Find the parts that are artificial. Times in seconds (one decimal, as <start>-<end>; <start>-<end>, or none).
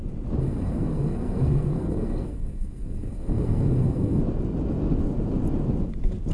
0.4-4.2